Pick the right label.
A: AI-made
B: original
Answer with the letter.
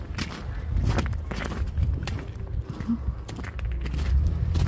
B